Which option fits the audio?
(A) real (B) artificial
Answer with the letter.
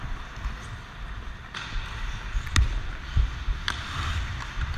A